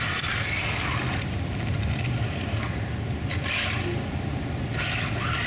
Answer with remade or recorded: recorded